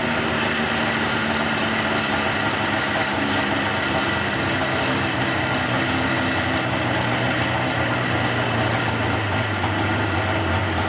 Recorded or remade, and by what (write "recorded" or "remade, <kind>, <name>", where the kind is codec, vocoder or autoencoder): recorded